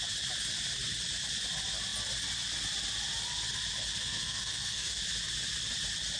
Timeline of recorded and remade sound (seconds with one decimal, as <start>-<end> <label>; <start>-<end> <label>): 0.0-4.0 recorded; 4.0-5.0 remade; 5.0-6.2 recorded